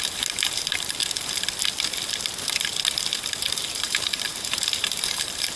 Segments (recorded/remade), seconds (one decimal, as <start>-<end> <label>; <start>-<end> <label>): 0.0-1.0 remade; 1.0-3.5 recorded; 3.5-5.6 remade

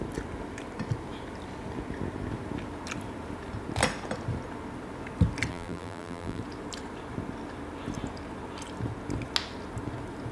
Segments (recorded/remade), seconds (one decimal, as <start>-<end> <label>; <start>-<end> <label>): 0.0-5.5 recorded; 5.5-6.4 remade; 6.4-10.3 recorded

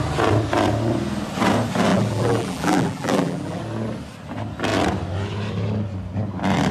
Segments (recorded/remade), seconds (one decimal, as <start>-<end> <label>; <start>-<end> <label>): 0.0-1.9 recorded; 1.9-3.6 remade; 3.6-6.7 recorded

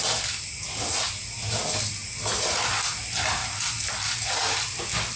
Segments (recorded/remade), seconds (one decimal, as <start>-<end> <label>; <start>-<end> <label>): 0.0-5.2 recorded

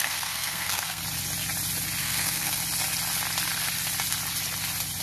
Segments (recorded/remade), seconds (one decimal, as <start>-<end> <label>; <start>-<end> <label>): 0.0-1.0 remade; 1.0-2.0 recorded; 2.0-2.6 remade; 2.6-5.0 recorded

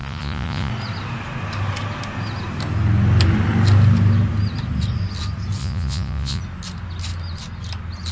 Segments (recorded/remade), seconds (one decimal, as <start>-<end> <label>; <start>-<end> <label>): 0.0-0.7 remade; 0.7-5.6 recorded; 5.6-6.4 remade; 6.4-8.1 recorded

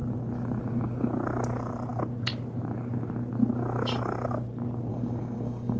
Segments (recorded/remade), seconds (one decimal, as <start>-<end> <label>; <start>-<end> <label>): 0.0-4.9 recorded; 4.9-5.8 remade